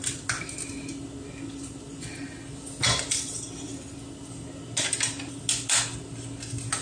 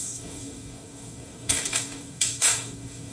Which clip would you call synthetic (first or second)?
second